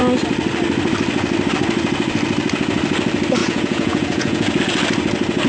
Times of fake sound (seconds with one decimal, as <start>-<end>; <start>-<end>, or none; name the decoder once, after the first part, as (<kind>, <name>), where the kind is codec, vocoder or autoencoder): 3.4-4.6 (vocoder, Vocos)